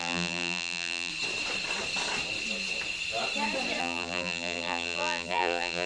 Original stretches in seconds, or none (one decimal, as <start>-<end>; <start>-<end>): 1.1-3.8